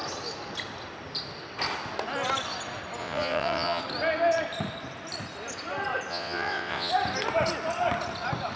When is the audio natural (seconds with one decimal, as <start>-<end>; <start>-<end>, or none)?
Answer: 0.0-3.0; 3.8-6.1; 6.9-8.6